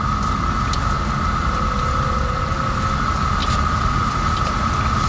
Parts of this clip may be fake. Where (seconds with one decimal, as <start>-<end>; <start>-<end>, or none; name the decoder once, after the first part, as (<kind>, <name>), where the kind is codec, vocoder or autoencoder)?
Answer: 3.4-4.6 (vocoder, BigVGAN v2)